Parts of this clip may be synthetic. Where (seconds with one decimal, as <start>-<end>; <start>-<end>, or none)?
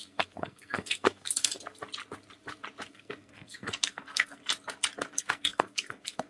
0.0-1.5; 2.9-4.4; 5.2-6.3